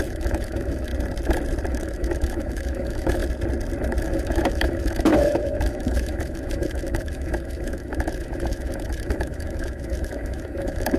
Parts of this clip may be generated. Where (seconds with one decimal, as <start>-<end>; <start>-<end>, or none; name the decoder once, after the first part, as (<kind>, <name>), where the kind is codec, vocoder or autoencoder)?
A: 0.0-0.9 (autoencoder, DAC-VAE); 1.7-3.2; 4.0-11.0